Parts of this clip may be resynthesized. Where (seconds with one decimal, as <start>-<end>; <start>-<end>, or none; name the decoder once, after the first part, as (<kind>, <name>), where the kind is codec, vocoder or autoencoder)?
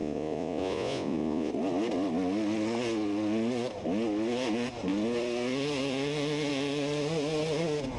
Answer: 0.0-1.5 (vocoder, Vocos)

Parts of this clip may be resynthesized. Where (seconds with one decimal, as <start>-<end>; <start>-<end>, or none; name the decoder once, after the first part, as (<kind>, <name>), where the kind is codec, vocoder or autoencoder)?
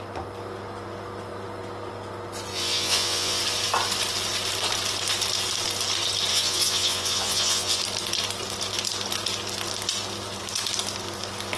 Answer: 2.5-3.4 (vocoder, Vocos); 6.3-7.8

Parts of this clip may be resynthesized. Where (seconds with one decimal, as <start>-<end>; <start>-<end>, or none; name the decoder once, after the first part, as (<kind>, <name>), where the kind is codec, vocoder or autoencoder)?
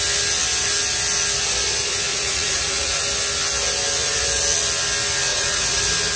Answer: 2.1-3.0 (vocoder, Vocos); 5.3-5.8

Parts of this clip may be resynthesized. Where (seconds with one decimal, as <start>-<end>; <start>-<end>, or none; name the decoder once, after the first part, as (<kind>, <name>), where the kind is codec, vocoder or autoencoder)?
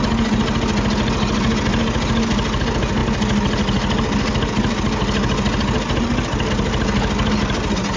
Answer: none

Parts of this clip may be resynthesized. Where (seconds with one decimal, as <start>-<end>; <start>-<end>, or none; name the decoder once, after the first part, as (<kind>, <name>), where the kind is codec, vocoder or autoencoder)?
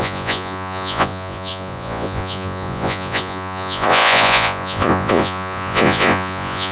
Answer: 0.0-6.7 (vocoder, Vocos)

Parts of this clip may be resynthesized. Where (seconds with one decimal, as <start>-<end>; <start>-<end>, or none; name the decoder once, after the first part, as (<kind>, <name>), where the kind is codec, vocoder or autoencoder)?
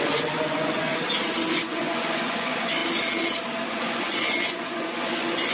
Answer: 0.0-0.9 (vocoder, Vocos); 1.5-2.8; 3.7-5.5